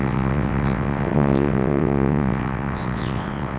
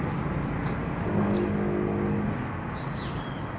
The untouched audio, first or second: second